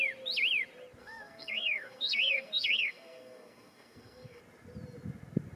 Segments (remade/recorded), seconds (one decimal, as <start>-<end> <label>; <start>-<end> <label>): 0.0-1.0 recorded; 1.0-4.4 remade; 4.4-5.6 recorded